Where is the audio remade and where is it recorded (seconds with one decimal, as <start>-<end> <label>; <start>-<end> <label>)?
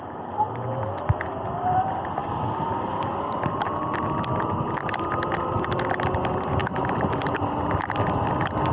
0.0-8.7 recorded